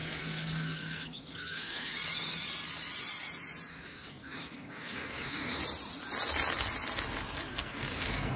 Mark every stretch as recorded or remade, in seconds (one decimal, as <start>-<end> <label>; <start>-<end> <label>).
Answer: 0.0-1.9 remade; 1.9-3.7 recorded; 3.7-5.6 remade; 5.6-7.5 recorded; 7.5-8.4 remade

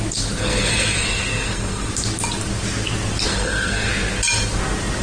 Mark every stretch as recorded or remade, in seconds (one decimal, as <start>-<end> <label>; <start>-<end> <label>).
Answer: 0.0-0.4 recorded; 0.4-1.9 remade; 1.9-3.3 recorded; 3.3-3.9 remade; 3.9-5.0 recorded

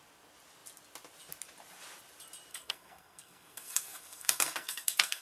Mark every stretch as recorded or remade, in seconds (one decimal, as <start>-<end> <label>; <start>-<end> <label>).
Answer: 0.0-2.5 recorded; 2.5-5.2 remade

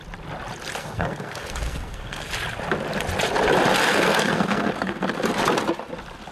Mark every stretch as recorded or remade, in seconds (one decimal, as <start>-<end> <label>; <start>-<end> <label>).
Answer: 0.0-0.8 recorded; 0.8-2.3 remade; 2.3-3.8 recorded; 3.8-5.1 remade; 5.1-6.3 recorded

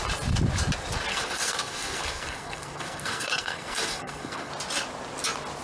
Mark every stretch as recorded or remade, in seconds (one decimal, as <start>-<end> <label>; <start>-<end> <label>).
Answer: 0.0-1.1 recorded; 1.1-4.5 remade; 4.5-5.6 recorded

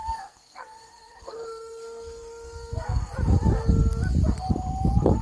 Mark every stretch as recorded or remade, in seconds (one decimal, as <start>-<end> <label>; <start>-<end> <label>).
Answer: 0.0-3.1 remade; 3.1-5.2 recorded